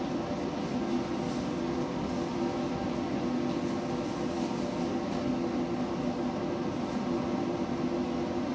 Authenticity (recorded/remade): recorded